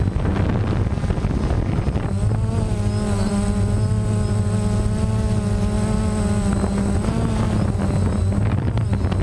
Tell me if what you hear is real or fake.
real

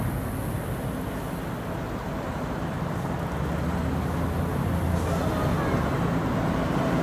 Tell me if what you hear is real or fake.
real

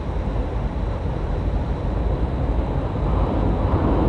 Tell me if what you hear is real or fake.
real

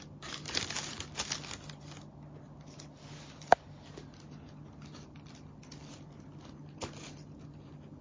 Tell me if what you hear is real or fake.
real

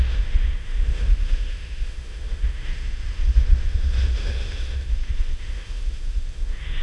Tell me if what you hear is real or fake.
fake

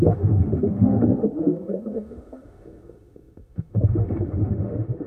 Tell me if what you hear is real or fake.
fake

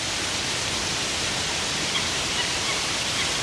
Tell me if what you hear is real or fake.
real